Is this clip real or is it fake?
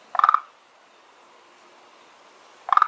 real